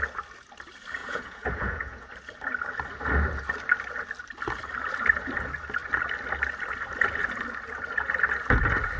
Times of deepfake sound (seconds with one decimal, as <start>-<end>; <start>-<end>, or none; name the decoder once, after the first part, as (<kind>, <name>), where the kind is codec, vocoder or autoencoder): 1.0-2.1 (vocoder, Vocos)